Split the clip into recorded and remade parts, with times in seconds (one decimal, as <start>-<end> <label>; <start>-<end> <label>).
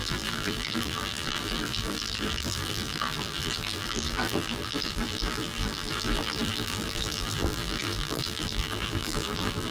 0.0-9.7 remade